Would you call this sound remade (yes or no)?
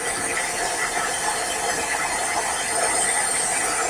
no